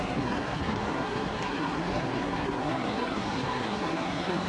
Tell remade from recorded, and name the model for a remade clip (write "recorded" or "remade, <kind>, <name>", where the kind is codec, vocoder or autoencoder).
remade, codec, SNAC